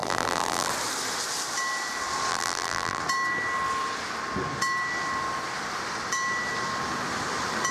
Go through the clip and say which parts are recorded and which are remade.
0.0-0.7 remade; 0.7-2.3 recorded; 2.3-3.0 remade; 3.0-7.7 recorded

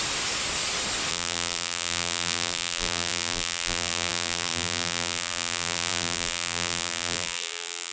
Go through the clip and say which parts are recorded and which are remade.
0.0-1.1 recorded; 1.1-7.9 remade

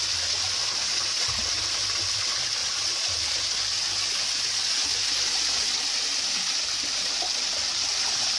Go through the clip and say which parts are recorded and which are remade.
0.0-0.8 recorded; 0.8-1.5 remade; 1.5-2.6 recorded; 2.6-3.1 remade; 3.1-8.4 recorded

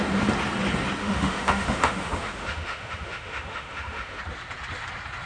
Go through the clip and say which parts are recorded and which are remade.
0.0-1.0 recorded; 1.0-4.2 remade; 4.2-5.3 recorded